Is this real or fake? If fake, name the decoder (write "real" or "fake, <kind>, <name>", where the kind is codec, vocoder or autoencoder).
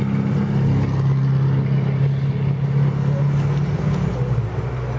real